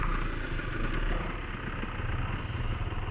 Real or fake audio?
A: real